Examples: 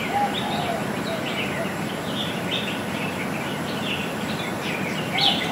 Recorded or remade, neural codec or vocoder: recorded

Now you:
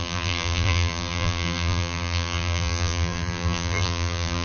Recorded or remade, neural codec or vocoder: remade, vocoder, BigVGAN v2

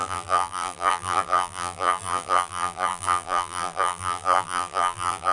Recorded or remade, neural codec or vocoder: remade, vocoder, BigVGAN v2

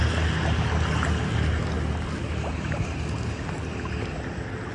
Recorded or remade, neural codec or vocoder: recorded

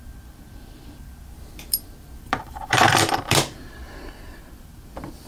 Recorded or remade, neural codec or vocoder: remade, vocoder, BigVGAN v2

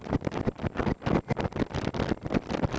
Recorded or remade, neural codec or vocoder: recorded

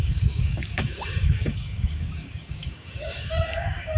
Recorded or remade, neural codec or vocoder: remade, codec, DAC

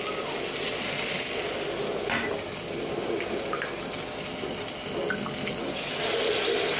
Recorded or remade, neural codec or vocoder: recorded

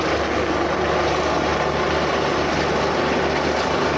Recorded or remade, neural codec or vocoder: recorded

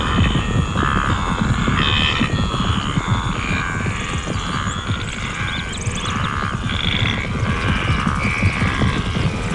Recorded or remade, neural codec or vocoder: recorded